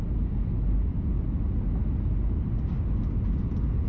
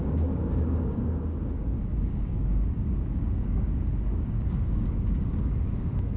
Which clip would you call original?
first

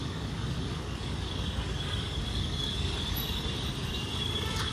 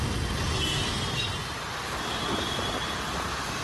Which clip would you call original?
second